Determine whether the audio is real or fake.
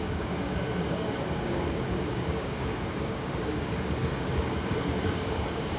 fake